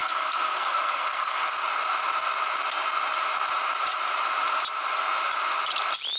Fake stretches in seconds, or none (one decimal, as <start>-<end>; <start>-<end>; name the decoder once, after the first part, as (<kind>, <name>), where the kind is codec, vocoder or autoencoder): 0.0-1.5 (codec, SNAC)